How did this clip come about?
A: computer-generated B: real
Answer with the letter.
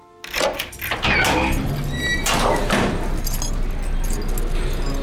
B